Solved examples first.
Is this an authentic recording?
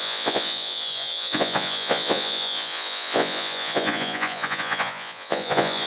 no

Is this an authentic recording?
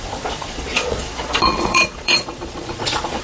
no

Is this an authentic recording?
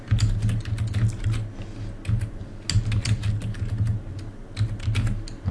yes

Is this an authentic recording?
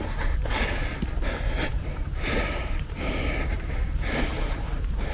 yes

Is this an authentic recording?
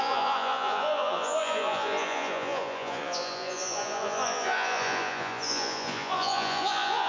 no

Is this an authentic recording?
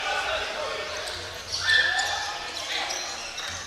yes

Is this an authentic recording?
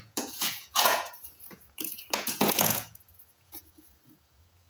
no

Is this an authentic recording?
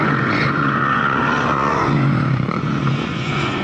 no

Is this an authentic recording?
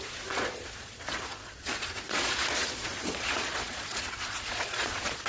no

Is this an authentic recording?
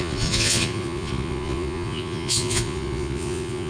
no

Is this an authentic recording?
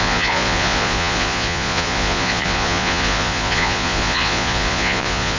no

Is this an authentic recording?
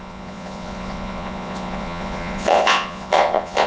no